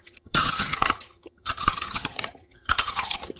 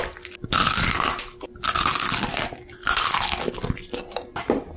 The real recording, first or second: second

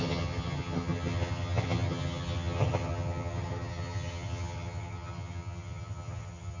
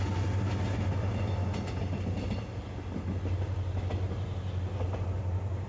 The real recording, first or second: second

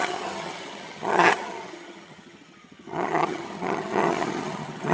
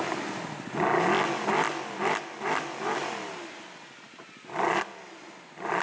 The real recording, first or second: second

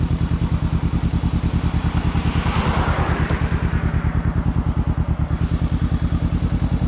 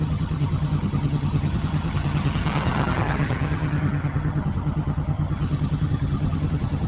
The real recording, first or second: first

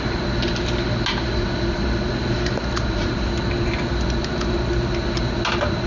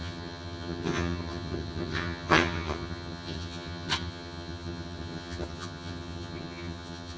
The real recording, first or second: first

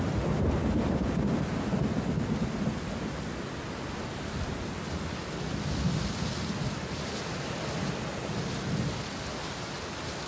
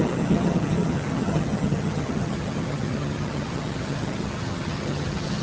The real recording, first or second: first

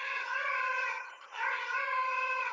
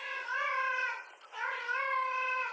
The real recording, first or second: second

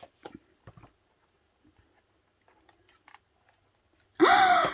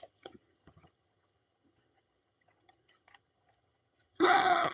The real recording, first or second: first